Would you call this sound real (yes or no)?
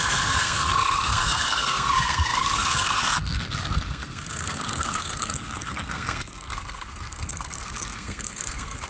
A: no